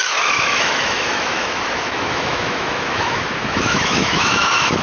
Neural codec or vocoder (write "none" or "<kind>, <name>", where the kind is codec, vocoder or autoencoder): autoencoder, DAC-VAE